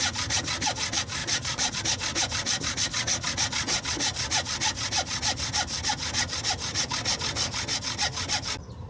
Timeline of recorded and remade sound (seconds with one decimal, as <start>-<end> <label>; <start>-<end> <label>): 0.0-1.2 recorded; 1.2-1.8 remade; 1.8-8.9 recorded